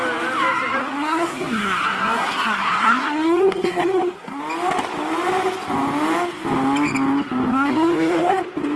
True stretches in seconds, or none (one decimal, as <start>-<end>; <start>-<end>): 0.0-0.8; 4.4-7.5; 8.4-8.8